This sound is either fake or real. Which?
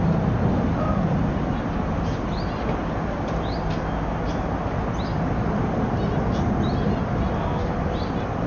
real